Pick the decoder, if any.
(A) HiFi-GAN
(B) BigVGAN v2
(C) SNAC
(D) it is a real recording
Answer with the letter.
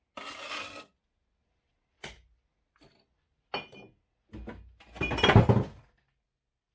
D